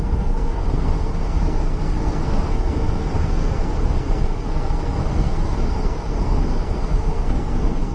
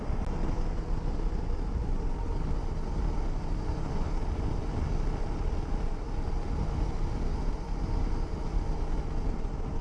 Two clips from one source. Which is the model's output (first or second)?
first